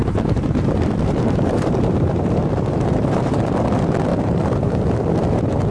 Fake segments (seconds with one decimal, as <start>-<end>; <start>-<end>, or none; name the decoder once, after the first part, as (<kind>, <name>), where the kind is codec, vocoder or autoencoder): 0.0-3.4 (vocoder, BigVGAN v2); 4.1-4.8